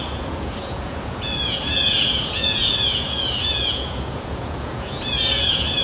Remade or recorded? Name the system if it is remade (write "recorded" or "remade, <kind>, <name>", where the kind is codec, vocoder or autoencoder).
remade, vocoder, Vocos